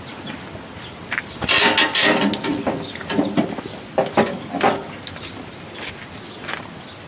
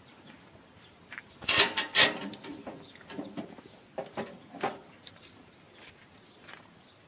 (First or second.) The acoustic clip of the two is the first